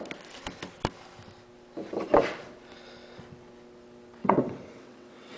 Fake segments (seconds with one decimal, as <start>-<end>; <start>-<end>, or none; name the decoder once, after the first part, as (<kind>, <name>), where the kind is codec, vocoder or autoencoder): 4.2-5.4 (vocoder, WaveNeXt)